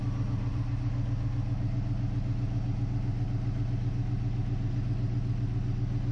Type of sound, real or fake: real